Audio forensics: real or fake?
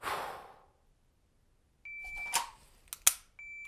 real